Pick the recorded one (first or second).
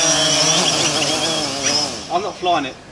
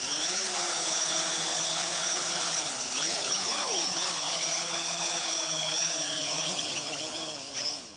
first